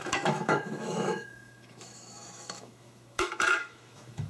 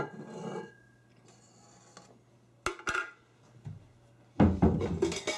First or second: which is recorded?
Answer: second